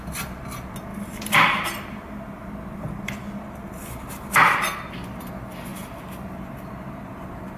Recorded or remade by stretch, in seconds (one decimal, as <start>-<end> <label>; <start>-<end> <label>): 0.0-0.9 recorded; 0.9-4.1 remade; 4.1-7.6 recorded